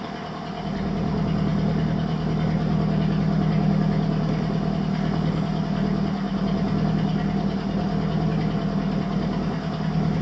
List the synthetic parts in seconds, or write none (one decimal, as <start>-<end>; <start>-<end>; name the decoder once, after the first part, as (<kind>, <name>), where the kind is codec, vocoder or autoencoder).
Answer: none